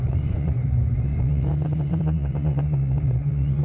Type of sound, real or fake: fake